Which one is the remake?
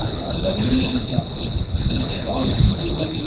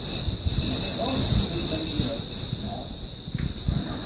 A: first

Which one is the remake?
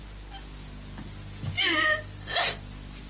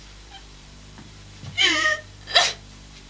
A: second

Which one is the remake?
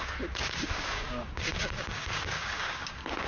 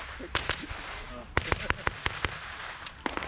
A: first